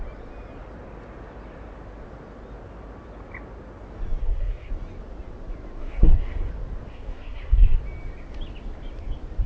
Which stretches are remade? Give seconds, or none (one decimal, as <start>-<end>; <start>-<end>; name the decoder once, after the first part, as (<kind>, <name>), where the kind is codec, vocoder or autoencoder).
4.2-4.7 (codec, SNAC); 5.8-6.5; 6.9-7.8